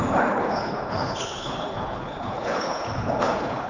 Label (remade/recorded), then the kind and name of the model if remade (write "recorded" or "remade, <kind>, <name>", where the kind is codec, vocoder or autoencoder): remade, codec, HILCodec